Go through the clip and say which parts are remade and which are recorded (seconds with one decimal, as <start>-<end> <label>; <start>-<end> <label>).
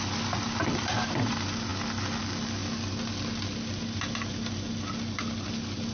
0.0-1.7 remade; 1.7-2.2 recorded; 2.2-2.6 remade; 2.6-3.8 recorded; 3.8-5.9 remade